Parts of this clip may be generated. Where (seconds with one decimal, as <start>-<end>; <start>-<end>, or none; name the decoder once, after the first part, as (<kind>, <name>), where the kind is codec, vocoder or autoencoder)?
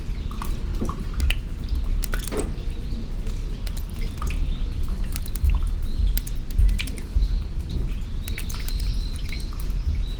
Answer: none